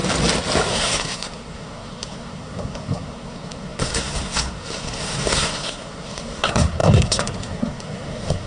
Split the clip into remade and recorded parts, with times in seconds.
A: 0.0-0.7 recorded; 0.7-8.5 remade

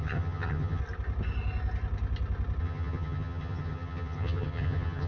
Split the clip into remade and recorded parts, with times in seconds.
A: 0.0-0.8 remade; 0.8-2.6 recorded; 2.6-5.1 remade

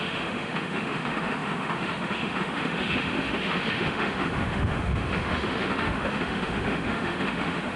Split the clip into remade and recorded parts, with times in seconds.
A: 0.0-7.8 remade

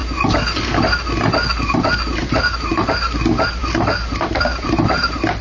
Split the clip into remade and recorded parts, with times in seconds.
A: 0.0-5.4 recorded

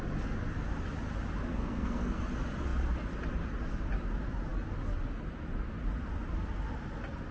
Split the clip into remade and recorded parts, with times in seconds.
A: 0.0-1.5 recorded; 1.5-2.2 remade; 2.2-7.3 recorded